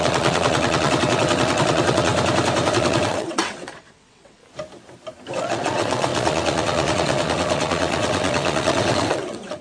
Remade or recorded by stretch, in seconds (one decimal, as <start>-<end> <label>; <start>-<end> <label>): 0.0-2.1 remade; 2.1-2.7 recorded; 2.7-4.4 remade; 4.4-5.4 recorded; 5.4-9.6 remade